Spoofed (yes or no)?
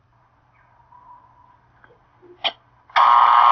no